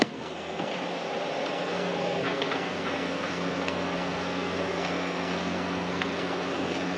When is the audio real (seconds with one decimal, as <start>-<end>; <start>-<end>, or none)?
0.7-1.5